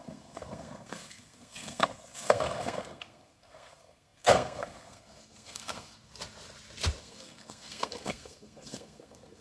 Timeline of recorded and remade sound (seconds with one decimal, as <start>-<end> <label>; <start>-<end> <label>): 0.0-6.1 remade; 6.1-7.0 recorded; 7.0-9.4 remade